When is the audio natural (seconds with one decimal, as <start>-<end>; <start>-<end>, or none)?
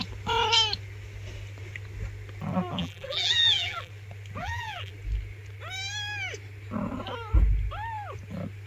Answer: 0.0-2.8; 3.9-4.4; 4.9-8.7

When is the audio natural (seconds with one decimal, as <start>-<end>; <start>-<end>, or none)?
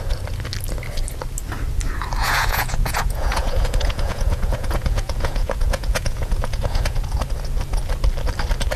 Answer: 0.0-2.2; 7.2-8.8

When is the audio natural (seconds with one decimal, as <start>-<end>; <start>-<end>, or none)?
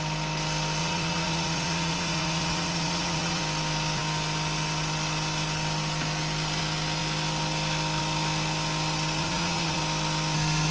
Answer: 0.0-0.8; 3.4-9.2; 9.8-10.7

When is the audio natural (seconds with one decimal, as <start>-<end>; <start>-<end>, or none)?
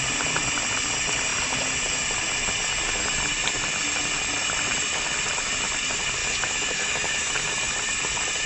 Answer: 0.0-6.2; 7.3-8.5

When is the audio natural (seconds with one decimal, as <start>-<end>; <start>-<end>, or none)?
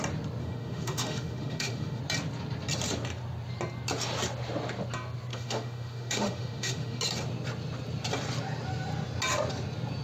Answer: 0.0-0.4; 2.0-5.3; 7.0-10.0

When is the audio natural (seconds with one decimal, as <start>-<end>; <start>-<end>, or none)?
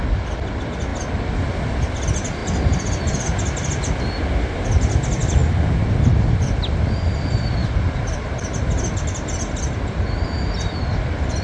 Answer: 0.0-11.4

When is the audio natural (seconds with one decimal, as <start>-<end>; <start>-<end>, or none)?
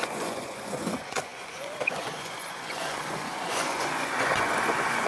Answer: none